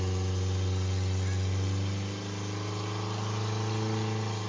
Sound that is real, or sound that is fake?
real